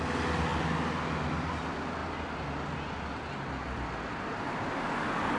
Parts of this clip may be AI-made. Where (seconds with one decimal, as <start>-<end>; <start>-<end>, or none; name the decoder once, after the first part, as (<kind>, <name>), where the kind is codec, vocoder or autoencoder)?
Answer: none